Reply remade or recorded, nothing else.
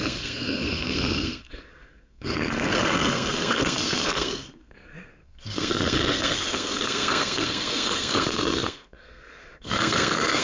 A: remade